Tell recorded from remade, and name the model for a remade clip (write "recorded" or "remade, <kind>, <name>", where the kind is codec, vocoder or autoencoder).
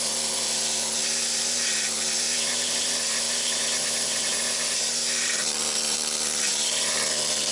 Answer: remade, vocoder, BigVGAN v2